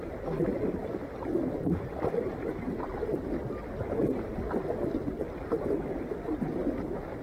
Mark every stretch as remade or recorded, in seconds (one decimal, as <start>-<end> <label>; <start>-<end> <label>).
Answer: 0.0-7.2 recorded

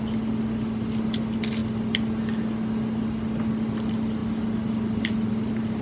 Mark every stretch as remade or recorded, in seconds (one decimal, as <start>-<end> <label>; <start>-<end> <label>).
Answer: 0.0-5.8 recorded

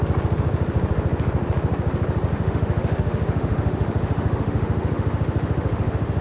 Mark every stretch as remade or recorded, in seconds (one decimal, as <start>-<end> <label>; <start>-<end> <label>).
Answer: 0.0-2.3 recorded; 2.3-6.2 remade

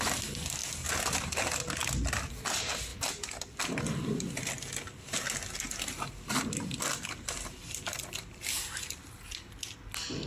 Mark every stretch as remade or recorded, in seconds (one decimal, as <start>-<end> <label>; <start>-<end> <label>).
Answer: 0.0-10.3 recorded

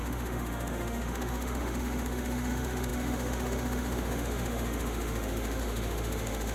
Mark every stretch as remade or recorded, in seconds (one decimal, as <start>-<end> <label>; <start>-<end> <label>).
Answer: 0.0-6.5 remade

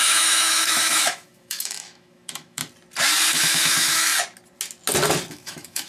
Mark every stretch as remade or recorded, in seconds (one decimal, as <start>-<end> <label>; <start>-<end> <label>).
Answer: 0.0-2.6 remade; 2.6-3.3 recorded; 3.3-4.1 remade; 4.1-5.3 recorded; 5.3-5.9 remade